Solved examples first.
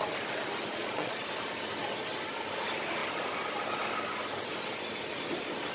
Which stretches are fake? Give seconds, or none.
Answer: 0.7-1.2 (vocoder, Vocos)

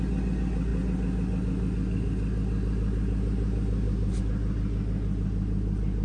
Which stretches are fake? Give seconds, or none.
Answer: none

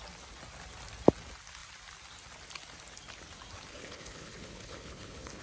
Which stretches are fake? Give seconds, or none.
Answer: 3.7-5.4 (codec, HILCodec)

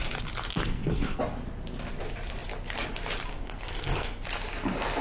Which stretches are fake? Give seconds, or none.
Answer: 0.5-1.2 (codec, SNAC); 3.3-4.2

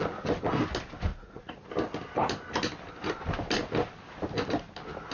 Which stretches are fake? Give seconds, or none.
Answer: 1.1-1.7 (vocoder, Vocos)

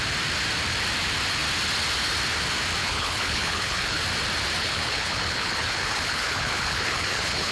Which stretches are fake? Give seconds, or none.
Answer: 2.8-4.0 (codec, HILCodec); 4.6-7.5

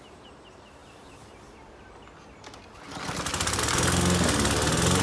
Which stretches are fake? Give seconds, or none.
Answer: none

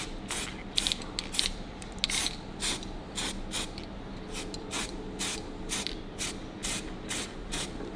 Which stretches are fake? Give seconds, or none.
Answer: none